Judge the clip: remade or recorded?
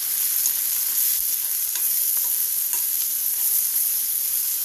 recorded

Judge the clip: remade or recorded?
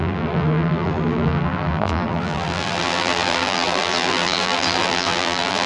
remade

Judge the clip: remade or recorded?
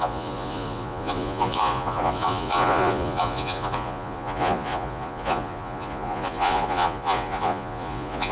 remade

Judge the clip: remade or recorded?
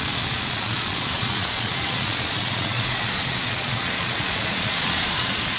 remade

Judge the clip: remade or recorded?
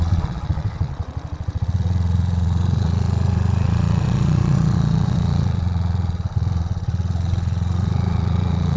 remade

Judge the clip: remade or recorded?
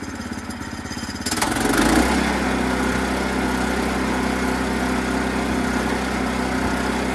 recorded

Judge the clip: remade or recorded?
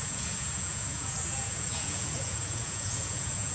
remade